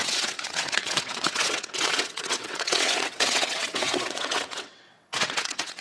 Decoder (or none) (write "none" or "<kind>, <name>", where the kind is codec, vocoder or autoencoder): vocoder, WaveNeXt